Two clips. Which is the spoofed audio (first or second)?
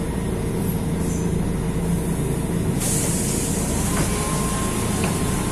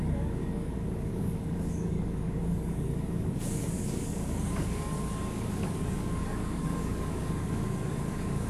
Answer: second